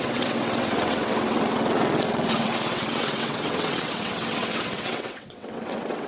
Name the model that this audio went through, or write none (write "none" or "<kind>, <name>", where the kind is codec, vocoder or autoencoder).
vocoder, WaveNeXt